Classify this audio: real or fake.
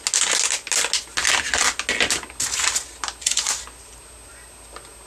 real